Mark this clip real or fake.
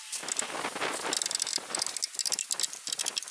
real